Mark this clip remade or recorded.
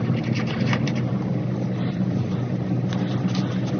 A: recorded